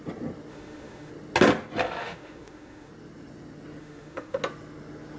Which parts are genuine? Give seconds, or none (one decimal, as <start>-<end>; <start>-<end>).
0.0-0.5; 1.1-2.0; 2.9-3.8; 4.4-5.2